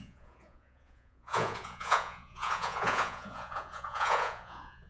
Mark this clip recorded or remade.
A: remade